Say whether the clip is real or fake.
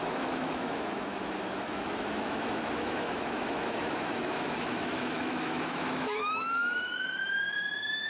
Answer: fake